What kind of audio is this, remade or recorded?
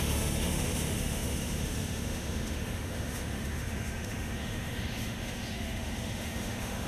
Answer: remade